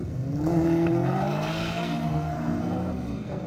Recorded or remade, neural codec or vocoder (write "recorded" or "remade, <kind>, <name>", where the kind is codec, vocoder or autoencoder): remade, codec, SNAC